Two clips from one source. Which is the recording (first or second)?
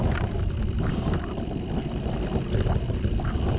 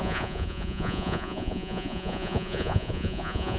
first